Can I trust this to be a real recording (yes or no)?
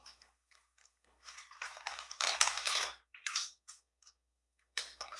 no